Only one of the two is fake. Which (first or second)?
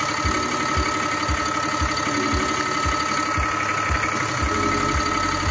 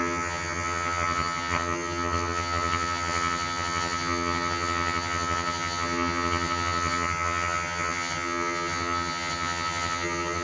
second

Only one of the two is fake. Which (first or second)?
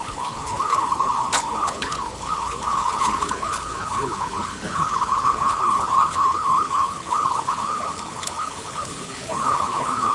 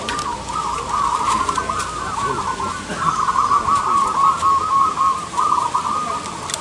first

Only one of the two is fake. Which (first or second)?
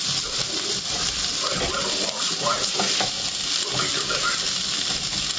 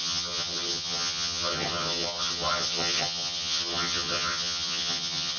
second